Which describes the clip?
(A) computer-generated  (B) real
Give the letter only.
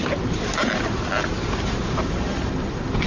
B